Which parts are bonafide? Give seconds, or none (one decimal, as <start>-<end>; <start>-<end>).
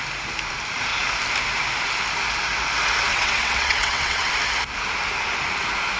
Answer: 0.0-3.1; 4.3-6.0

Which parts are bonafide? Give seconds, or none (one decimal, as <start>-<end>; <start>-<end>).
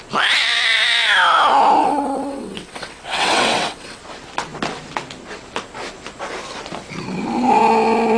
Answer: 0.0-1.8; 4.0-8.2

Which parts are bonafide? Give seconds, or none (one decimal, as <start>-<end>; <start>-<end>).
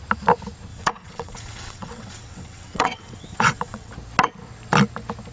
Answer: 0.0-0.7; 3.9-5.3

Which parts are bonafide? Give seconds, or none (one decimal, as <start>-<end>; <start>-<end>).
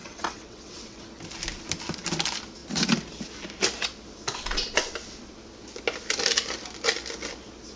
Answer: 1.0-7.8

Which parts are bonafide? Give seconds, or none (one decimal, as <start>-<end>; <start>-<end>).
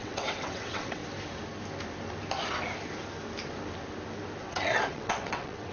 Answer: 1.0-4.4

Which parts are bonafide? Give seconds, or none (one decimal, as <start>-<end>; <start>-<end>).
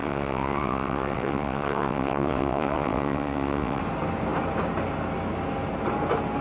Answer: 3.8-6.4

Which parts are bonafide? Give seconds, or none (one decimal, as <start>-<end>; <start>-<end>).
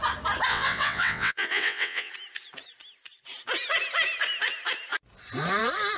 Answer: 0.0-0.5; 2.1-6.0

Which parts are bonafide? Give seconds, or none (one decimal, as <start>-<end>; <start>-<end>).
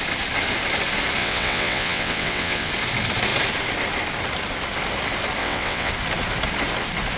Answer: 0.0-1.2; 2.7-5.4; 5.9-7.2